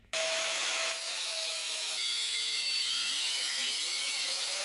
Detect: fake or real fake